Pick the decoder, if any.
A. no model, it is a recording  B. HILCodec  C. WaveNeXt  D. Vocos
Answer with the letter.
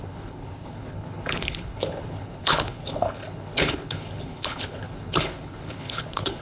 B